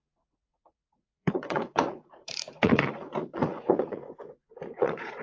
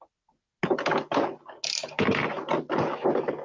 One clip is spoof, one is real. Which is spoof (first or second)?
first